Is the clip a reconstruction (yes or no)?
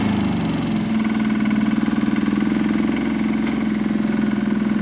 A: no